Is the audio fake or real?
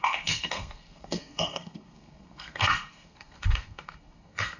fake